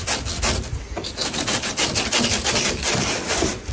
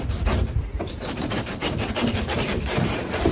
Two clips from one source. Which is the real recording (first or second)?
first